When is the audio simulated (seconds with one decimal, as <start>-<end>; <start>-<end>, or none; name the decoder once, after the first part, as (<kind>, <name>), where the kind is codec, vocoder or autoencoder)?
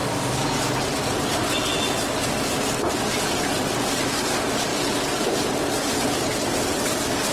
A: none